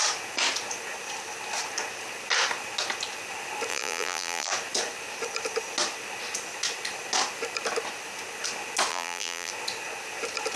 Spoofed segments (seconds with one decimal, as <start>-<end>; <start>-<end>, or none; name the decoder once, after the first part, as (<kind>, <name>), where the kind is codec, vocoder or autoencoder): 3.7-4.5 (vocoder, BigVGAN v2); 8.9-9.5